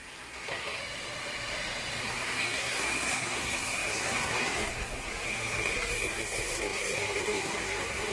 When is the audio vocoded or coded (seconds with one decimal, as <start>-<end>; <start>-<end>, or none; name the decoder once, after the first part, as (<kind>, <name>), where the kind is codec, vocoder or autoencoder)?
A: 0.0-0.8 (codec, SNAC); 2.0-8.1